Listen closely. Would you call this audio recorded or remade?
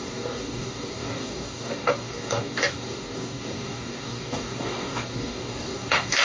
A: remade